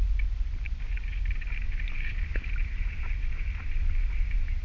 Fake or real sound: real